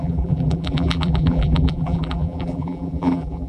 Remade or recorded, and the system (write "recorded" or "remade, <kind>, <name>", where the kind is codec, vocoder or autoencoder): remade, vocoder, BigVGAN v2